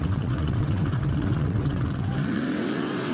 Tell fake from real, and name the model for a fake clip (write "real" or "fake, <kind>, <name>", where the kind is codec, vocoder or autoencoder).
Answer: fake, vocoder, WaveNeXt